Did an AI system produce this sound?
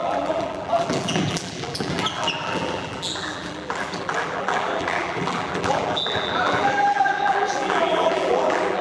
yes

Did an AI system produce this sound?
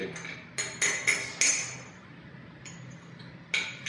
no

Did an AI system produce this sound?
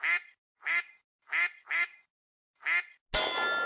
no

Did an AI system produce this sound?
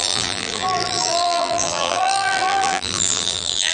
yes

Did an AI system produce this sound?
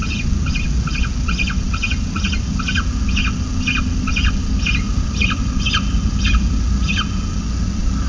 no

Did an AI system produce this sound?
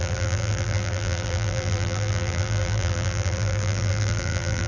yes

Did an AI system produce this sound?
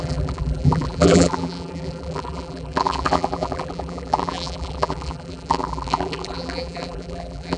yes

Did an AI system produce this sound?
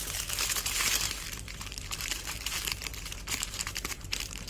yes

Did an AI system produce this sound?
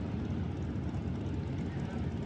no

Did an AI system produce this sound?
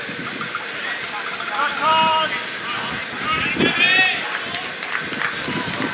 yes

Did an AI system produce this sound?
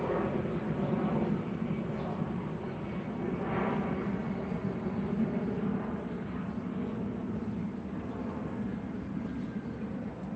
no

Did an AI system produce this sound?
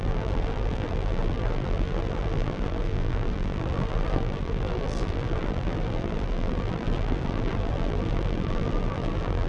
yes